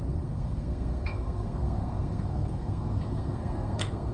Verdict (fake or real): fake